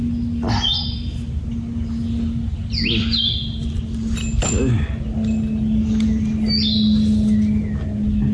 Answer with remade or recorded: recorded